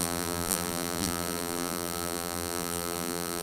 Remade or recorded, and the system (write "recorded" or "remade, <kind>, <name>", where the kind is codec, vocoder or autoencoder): remade, vocoder, BigVGAN v2